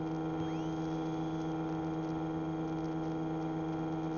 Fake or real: real